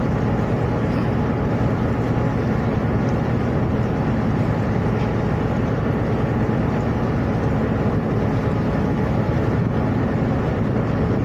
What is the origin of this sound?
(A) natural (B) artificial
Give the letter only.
A